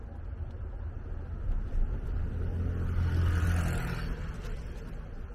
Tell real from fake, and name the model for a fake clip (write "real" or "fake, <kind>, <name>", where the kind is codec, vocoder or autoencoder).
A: real